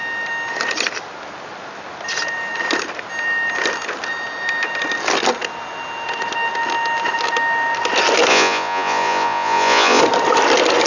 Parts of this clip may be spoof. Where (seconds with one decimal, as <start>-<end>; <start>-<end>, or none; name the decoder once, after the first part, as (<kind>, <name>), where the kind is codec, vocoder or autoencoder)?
8.3-10.0 (vocoder, Vocos)